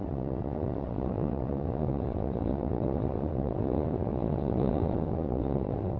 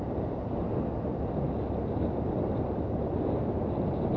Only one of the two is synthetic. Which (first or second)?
first